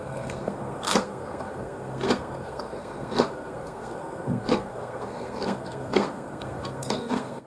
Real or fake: fake